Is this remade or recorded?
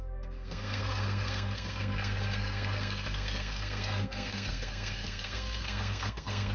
remade